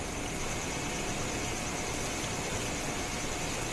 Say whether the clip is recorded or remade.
recorded